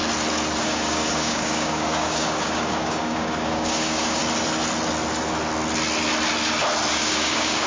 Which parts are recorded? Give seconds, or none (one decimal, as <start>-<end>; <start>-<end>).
0.0-0.6; 4.2-6.9